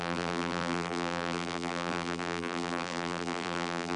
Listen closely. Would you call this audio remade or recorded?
remade